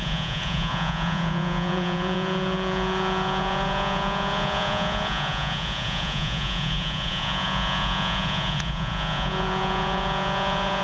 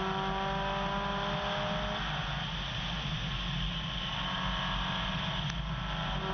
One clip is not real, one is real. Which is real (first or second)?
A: second